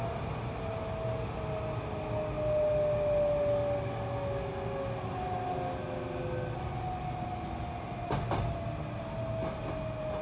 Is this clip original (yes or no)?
yes